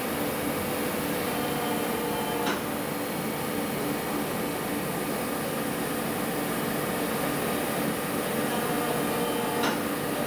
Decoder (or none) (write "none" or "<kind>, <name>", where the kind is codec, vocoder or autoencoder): none